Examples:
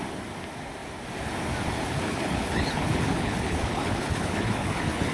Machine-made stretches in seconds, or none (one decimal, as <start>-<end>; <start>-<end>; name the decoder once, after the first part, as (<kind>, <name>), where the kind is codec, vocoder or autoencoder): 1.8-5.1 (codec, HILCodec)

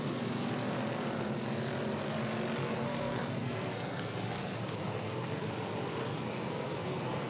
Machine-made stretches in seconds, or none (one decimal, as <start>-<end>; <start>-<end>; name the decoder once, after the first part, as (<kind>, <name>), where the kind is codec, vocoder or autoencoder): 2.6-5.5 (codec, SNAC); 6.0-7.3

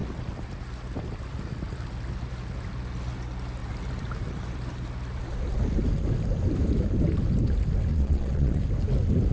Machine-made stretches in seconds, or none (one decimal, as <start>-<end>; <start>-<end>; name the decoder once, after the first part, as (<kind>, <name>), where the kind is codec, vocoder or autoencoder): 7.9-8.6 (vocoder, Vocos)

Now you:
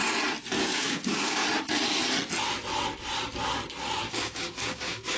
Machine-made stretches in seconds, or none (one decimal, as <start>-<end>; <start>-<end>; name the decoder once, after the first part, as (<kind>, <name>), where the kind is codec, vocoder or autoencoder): 0.6-1.4 (codec, DAC); 4.1-5.2

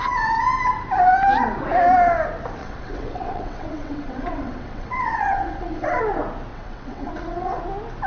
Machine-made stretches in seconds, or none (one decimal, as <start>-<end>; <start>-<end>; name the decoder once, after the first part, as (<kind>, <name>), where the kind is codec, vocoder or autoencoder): 2.6-6.0 (vocoder, WaveNeXt); 6.5-7.6

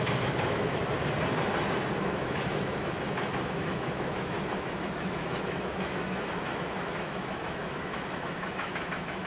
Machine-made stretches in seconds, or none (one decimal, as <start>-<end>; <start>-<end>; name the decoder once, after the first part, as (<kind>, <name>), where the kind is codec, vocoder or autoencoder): 0.0-0.8 (autoencoder, DAC-VAE); 2.0-9.3

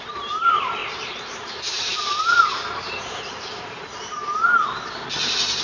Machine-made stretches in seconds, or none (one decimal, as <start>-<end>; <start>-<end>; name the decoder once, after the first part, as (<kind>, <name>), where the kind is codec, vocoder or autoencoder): 0.0-4.2 (vocoder, BigVGAN v2)